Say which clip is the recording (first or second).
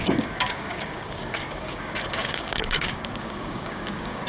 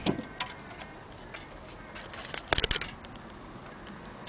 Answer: second